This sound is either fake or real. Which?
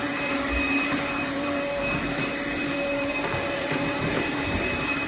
fake